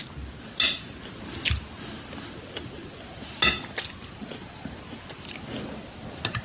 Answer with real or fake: real